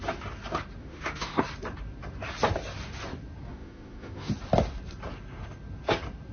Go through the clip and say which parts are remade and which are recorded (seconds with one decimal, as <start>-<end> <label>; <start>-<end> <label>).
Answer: 0.0-0.8 recorded; 0.8-1.4 remade; 1.4-3.5 recorded; 3.5-4.3 remade; 4.3-6.3 recorded